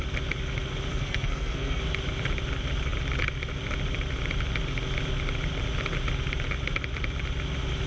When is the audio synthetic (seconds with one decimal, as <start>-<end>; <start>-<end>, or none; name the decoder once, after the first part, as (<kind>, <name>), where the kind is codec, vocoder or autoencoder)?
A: 0.9-1.8 (codec, SNAC)